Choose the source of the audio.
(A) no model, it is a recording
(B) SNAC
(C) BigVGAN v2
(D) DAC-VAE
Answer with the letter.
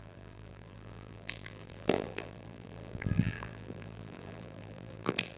C